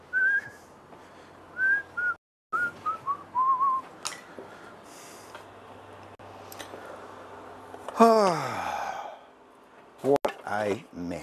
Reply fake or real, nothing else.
real